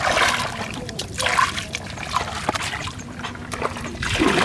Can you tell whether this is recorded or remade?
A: recorded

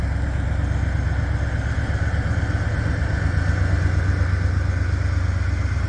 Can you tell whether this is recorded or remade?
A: recorded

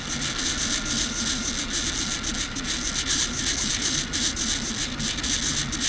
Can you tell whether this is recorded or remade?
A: recorded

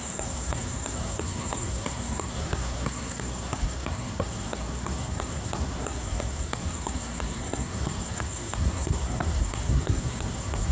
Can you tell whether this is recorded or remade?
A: remade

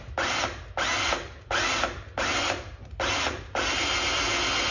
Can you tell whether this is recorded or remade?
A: recorded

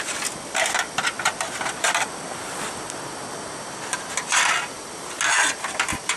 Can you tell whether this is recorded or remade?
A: recorded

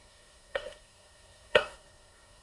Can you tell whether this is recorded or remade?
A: remade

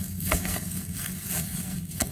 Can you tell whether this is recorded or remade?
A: remade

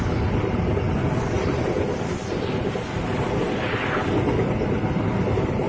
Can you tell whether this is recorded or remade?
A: recorded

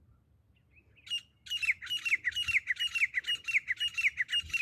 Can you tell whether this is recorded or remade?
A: recorded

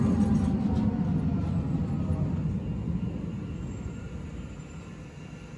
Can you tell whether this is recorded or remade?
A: recorded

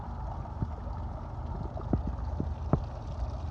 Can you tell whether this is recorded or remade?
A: recorded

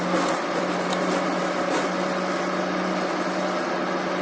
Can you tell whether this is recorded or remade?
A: recorded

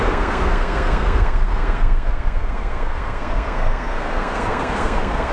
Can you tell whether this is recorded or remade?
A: remade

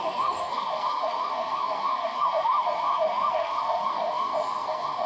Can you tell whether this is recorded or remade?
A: remade